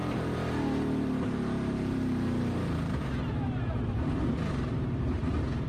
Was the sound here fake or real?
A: fake